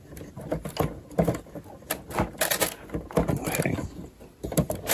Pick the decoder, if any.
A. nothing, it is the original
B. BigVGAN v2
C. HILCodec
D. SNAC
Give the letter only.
A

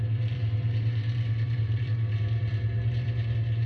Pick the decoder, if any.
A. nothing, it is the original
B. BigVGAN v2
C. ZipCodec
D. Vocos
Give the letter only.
B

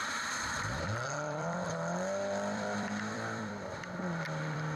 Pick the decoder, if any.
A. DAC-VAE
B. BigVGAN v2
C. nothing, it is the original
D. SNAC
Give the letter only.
B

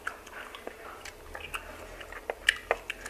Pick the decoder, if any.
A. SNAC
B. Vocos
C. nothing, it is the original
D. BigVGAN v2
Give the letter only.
C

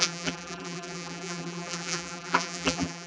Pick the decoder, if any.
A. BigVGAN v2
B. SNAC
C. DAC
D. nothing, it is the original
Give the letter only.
A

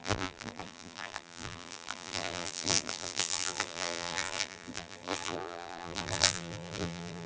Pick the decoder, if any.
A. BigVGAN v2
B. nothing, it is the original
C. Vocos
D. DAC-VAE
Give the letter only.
A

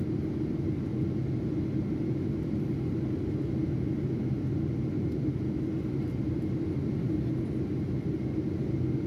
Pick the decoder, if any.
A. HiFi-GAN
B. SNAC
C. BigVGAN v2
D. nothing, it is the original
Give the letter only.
D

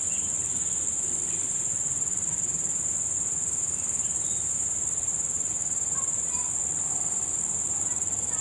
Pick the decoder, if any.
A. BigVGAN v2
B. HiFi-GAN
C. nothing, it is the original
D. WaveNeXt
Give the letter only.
A